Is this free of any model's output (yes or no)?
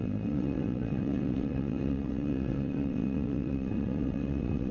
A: no